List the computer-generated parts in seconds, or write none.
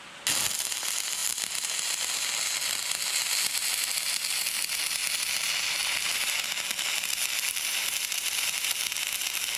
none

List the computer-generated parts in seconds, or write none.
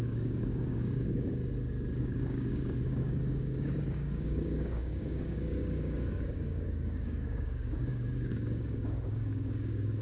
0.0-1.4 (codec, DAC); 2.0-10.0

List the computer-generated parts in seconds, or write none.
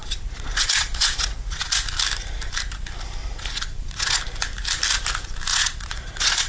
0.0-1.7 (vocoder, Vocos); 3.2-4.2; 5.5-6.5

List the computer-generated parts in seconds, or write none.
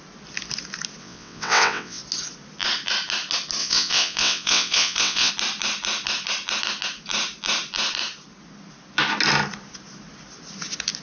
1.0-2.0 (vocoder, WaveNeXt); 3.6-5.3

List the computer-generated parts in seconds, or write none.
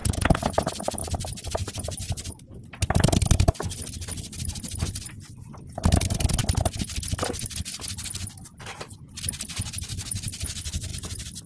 none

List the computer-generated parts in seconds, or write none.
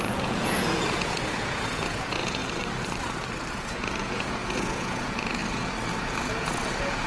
0.0-2.4 (vocoder, Vocos); 3.5-5.4; 5.9-7.1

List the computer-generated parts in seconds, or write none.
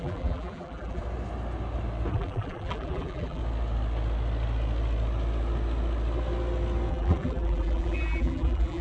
0.0-1.0 (vocoder, BigVGAN v2); 2.1-3.4; 6.9-8.8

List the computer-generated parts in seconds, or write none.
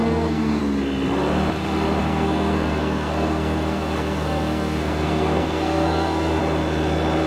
0.0-0.6 (codec, SNAC); 2.0-6.4